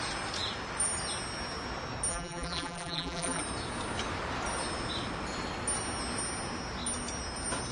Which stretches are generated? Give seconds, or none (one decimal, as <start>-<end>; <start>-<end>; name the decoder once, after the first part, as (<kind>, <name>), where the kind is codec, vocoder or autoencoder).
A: 2.1-3.4 (vocoder, BigVGAN v2)